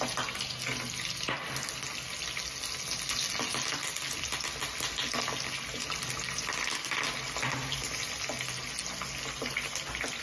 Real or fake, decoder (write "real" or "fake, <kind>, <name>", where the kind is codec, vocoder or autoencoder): real